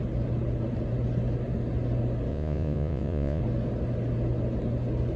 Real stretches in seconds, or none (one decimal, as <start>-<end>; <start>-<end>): 0.0-2.3; 3.4-5.2